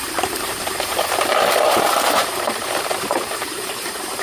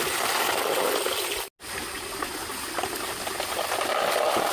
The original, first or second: second